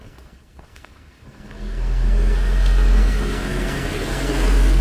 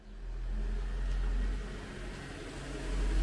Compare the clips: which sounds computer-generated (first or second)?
first